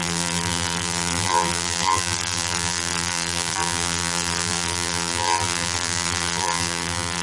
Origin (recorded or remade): remade